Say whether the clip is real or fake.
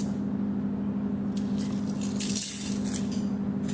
real